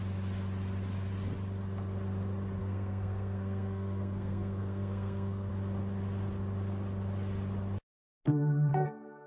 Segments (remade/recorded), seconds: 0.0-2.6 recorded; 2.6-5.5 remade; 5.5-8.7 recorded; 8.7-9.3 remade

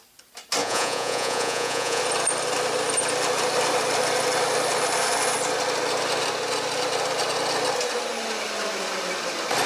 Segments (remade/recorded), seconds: 0.0-0.6 recorded; 0.6-2.0 remade; 2.0-9.7 recorded

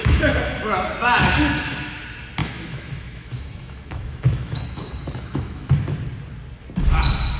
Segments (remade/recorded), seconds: 0.0-1.2 recorded; 1.2-2.0 remade; 2.0-2.4 recorded; 2.4-5.7 remade; 5.7-7.4 recorded

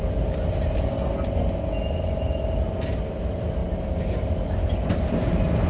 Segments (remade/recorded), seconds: 0.0-5.7 recorded